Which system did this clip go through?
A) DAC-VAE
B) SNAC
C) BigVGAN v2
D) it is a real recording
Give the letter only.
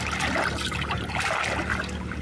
D